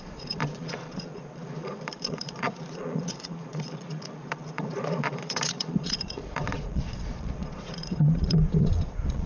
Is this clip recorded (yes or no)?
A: no